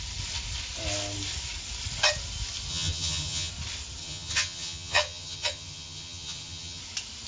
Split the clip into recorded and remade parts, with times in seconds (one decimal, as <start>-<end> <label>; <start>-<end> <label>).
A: 0.0-2.7 recorded; 2.7-3.5 remade; 3.5-4.0 recorded; 4.0-6.8 remade; 6.8-7.3 recorded